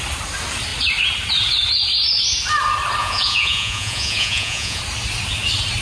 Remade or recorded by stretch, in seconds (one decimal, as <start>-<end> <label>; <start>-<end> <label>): 0.0-3.0 recorded; 3.0-4.8 remade; 4.8-5.8 recorded